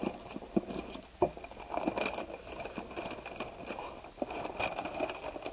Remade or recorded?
recorded